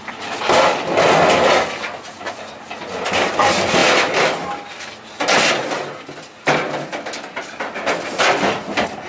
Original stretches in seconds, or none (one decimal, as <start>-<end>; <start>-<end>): 0.0-9.1